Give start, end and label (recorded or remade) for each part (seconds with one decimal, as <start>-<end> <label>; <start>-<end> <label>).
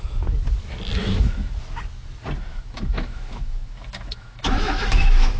0.0-1.0 recorded; 1.0-1.5 remade; 1.5-2.5 recorded; 2.5-5.4 remade